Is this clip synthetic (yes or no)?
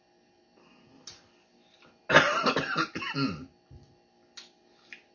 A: no